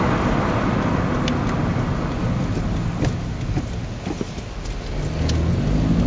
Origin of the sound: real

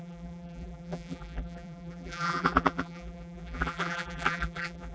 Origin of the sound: fake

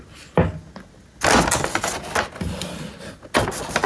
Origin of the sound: real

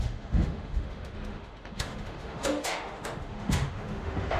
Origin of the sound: fake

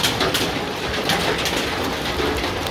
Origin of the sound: real